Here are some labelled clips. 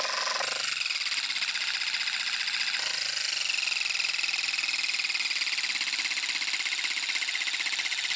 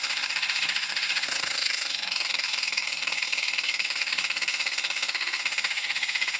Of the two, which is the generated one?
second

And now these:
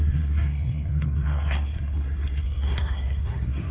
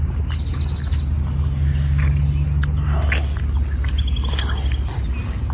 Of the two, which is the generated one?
first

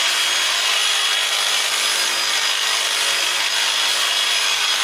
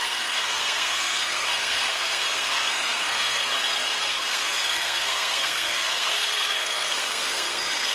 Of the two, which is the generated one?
second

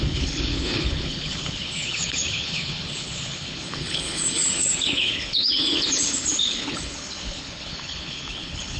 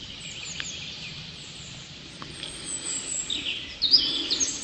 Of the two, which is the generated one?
first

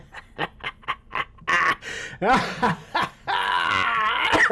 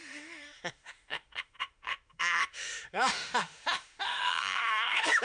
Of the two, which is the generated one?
second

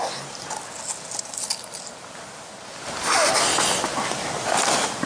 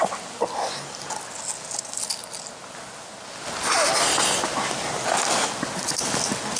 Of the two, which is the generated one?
first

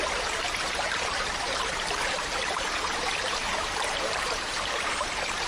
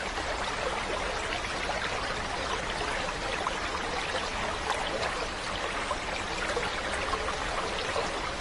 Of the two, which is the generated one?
first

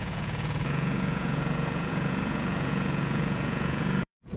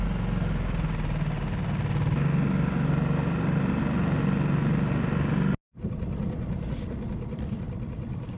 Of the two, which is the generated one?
first